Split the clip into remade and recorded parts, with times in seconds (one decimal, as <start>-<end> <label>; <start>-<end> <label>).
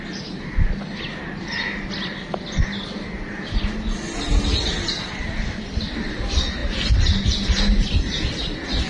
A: 0.0-8.9 recorded